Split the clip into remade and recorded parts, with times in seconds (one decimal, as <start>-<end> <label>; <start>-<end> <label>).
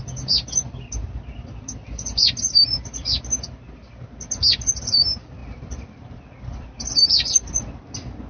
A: 0.0-2.2 recorded; 2.2-4.2 remade; 4.2-5.4 recorded; 5.4-7.8 remade; 7.8-8.3 recorded